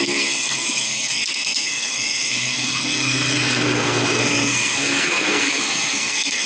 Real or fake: fake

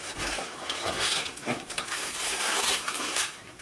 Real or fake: fake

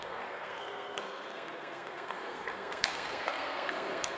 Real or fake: fake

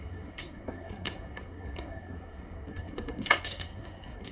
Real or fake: fake